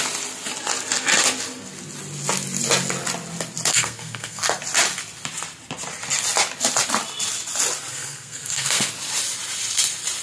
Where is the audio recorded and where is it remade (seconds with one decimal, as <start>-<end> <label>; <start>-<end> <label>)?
0.0-3.7 recorded; 3.7-4.4 remade; 4.4-7.9 recorded; 7.9-8.9 remade; 8.9-10.2 recorded